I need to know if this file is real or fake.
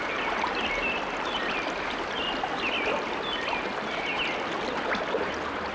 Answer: real